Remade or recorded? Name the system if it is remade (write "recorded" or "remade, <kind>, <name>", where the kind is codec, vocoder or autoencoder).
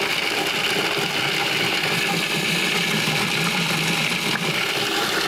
recorded